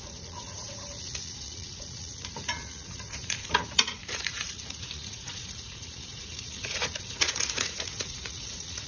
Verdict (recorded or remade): remade